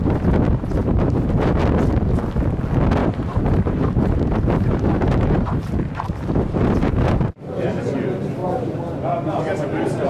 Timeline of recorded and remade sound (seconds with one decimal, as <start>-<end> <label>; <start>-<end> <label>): 0.0-0.8 recorded; 0.8-1.5 remade; 1.5-3.0 recorded; 3.0-7.8 remade; 7.8-8.4 recorded; 8.4-9.4 remade; 9.4-10.1 recorded